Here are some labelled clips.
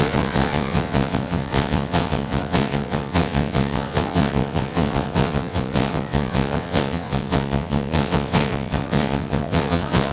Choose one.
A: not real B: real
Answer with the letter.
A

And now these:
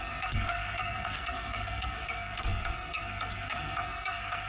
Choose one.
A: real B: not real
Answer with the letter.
B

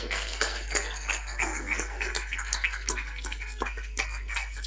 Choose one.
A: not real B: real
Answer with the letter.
A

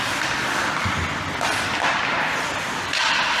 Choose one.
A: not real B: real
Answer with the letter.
B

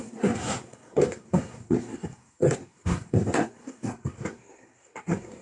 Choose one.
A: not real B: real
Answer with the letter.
A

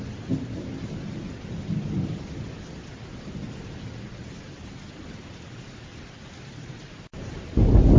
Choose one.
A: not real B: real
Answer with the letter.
B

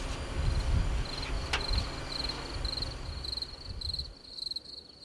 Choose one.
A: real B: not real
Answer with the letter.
A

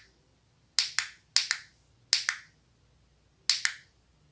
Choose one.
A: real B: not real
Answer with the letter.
A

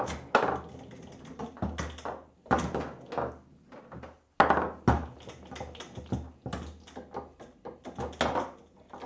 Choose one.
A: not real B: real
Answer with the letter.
B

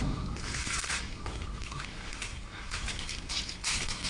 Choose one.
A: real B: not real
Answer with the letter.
B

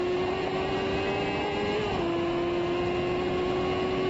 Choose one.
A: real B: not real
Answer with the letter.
A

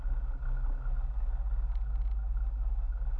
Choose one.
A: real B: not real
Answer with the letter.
A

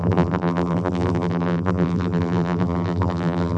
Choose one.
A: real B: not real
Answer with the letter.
B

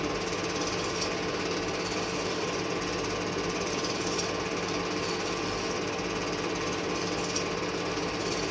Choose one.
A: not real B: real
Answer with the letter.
B